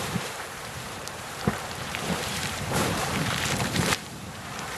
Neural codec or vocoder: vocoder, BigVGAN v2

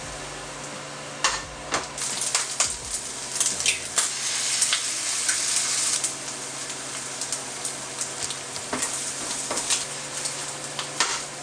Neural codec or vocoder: none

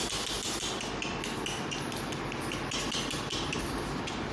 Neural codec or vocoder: none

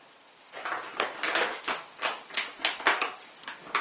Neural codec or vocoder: none